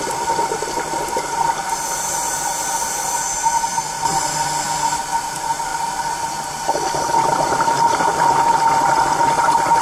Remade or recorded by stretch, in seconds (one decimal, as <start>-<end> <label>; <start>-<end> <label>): 0.0-9.8 recorded